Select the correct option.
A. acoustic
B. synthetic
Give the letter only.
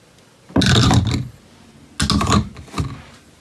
A